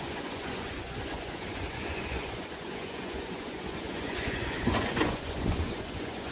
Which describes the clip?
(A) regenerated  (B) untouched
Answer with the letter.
A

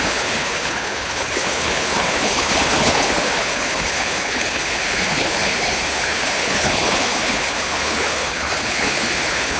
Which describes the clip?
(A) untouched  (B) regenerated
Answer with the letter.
B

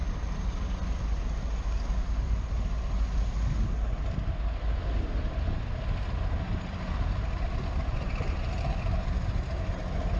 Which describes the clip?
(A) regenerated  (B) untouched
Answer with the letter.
B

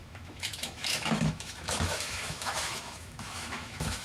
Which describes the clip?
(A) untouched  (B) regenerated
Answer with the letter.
B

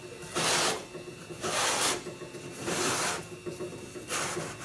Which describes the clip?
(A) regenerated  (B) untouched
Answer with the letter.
B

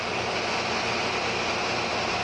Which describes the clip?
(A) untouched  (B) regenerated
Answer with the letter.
A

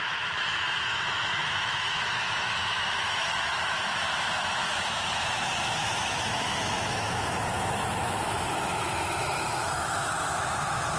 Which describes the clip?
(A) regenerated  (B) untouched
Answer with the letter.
A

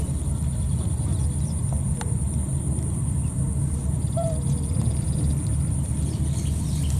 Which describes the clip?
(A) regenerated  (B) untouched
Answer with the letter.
A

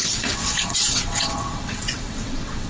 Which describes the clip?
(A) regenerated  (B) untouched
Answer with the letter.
A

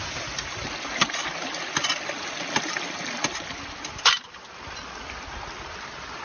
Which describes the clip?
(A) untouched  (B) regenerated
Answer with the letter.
A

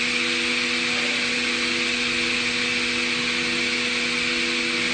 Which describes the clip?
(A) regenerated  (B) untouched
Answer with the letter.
B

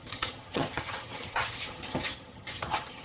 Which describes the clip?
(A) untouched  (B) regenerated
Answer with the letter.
B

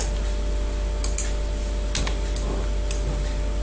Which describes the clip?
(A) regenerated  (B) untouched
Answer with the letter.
B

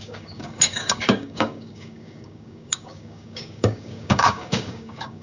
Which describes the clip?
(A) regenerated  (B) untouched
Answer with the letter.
A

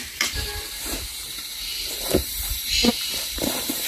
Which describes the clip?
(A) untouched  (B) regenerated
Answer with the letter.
B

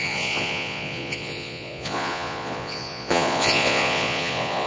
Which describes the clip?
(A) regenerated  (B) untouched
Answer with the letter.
A